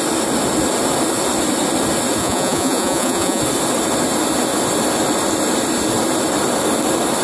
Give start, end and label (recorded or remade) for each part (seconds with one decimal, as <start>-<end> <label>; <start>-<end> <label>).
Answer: 0.0-2.2 recorded; 2.2-3.4 remade; 3.4-7.2 recorded